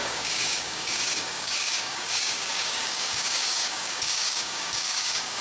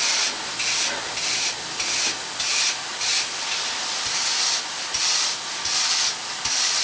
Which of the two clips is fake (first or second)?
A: first